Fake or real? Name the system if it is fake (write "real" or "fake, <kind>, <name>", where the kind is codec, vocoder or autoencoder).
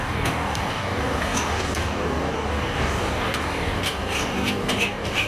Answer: fake, codec, DAC